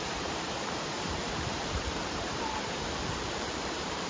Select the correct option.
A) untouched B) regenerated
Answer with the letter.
B